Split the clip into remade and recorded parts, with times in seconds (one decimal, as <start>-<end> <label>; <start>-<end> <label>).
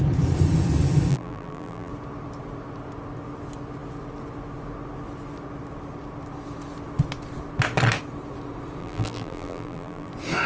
0.0-1.1 recorded; 1.1-1.9 remade; 1.9-8.8 recorded; 8.8-10.1 remade; 10.1-10.5 recorded